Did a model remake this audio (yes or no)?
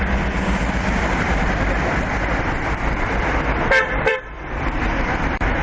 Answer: yes